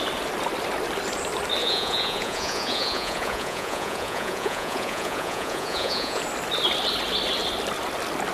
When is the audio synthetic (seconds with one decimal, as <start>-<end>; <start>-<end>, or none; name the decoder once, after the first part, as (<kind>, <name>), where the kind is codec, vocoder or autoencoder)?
1.6-6.2 (vocoder, Vocos)